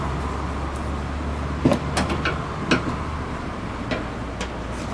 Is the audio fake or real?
real